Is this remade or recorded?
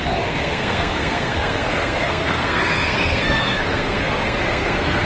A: remade